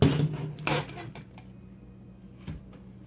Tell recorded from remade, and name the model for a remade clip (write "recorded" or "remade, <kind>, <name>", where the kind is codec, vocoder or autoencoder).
recorded